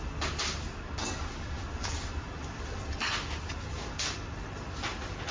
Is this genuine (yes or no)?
yes